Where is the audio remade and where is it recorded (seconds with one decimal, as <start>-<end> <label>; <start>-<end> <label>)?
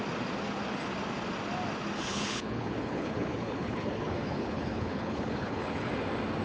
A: 0.0-2.1 recorded; 2.1-5.9 remade; 5.9-6.4 recorded